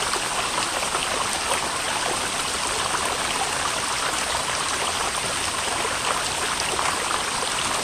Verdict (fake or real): real